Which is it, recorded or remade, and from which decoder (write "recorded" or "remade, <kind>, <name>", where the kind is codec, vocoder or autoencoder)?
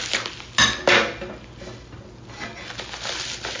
recorded